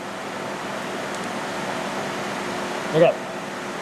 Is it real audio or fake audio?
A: real